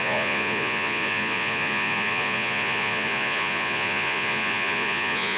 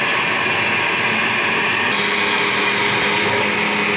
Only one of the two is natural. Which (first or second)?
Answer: second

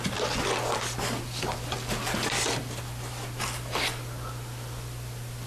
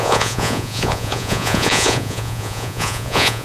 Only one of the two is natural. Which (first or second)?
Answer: first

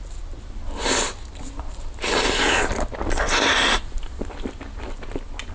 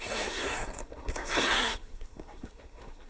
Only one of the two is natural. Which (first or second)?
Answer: first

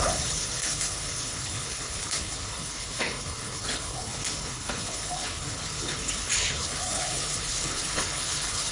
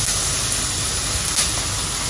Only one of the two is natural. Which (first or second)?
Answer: second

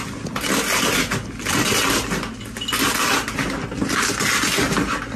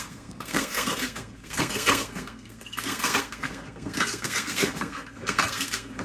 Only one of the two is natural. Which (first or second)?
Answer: first